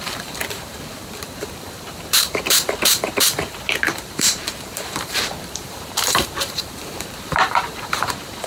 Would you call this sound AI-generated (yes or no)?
yes